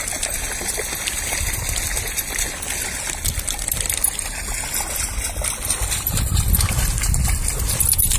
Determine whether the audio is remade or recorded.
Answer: recorded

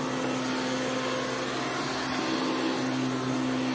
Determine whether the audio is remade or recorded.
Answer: recorded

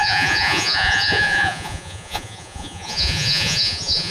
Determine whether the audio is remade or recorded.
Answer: remade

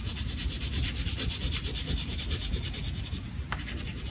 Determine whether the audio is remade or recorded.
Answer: remade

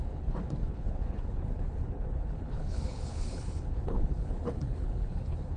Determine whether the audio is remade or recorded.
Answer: remade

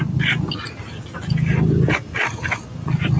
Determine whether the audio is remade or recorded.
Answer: recorded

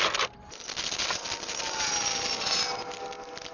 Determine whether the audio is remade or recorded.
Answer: recorded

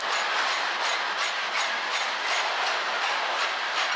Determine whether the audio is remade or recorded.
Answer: recorded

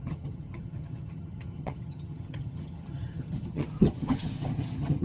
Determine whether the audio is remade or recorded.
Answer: remade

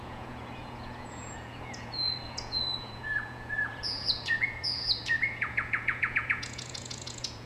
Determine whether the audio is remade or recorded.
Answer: remade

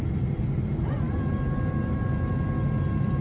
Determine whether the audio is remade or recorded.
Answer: recorded